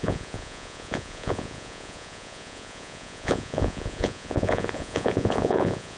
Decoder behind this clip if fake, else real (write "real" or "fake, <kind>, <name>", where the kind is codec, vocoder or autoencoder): fake, vocoder, Vocos